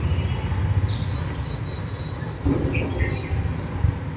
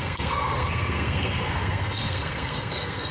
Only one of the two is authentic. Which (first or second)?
first